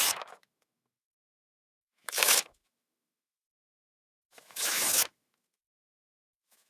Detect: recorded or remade remade